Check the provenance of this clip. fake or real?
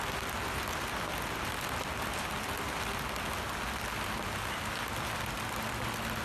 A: real